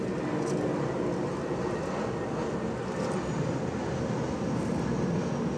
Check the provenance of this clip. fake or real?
real